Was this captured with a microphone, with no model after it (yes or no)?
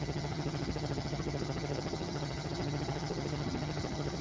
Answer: no